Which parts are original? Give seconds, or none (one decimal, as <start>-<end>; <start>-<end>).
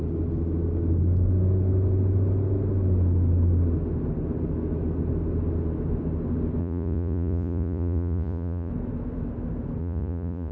0.0-6.6; 8.7-9.8